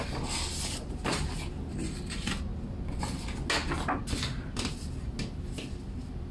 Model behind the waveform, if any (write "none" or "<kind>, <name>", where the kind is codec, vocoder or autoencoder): none